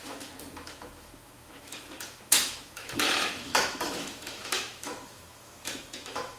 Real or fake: fake